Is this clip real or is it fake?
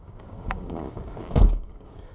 fake